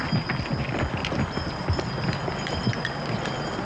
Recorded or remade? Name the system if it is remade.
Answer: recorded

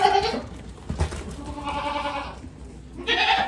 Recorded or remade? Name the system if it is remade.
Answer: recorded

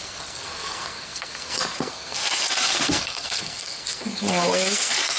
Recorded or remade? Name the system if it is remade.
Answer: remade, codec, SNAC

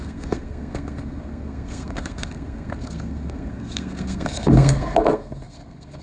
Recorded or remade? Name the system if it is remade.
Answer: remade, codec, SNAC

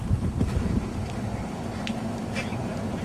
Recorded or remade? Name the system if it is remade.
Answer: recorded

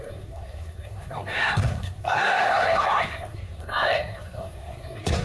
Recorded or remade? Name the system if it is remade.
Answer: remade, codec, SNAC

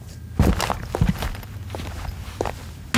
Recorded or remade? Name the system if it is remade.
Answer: recorded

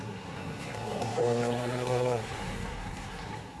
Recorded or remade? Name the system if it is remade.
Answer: remade, codec, SNAC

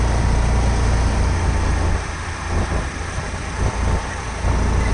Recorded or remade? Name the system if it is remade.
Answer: recorded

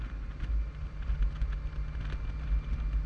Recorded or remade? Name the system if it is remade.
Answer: recorded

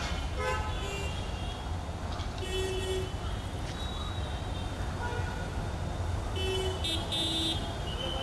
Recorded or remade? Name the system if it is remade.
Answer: recorded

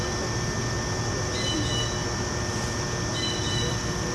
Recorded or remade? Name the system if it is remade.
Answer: recorded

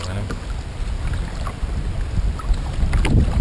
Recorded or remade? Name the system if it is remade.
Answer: recorded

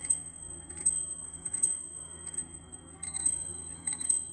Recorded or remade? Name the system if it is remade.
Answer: remade, codec, SNAC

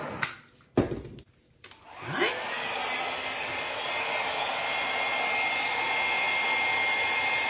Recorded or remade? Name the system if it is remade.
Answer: recorded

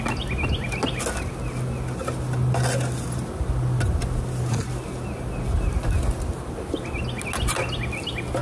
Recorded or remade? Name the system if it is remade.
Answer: recorded